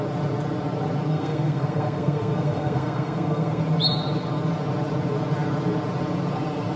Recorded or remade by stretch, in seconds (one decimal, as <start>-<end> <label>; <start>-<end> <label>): 0.0-1.1 recorded; 1.1-3.6 remade; 3.6-6.8 recorded